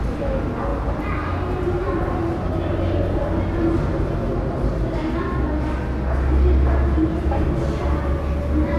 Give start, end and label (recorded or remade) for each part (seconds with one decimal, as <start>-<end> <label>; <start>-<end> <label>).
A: 0.0-8.8 recorded